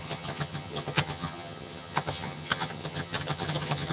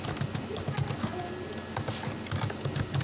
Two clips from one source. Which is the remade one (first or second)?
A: first